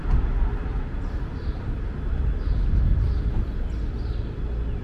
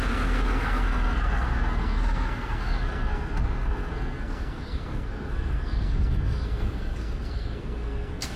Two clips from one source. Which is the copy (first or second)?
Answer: second